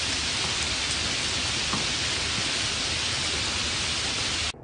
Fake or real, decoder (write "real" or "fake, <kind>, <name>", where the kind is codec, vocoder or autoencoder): real